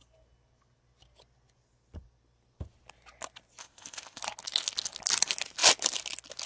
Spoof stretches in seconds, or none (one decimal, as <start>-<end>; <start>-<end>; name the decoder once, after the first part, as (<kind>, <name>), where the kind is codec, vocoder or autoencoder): 3.6-4.2 (codec, ZipCodec)